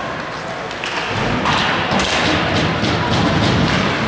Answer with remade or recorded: recorded